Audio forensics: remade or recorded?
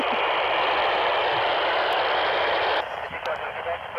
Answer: remade